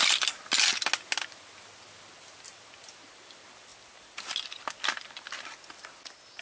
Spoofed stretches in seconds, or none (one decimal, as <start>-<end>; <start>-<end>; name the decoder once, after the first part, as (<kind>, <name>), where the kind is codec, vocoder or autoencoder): none